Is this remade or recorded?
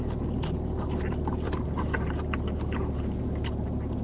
recorded